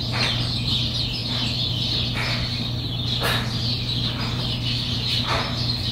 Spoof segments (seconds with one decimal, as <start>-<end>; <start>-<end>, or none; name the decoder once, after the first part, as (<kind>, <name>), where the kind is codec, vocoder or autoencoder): none